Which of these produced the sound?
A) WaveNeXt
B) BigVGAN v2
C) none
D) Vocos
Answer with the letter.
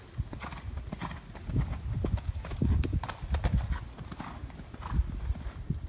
C